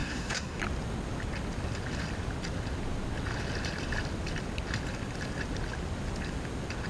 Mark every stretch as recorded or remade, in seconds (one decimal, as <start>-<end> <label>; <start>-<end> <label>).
0.0-0.6 remade; 0.6-6.9 recorded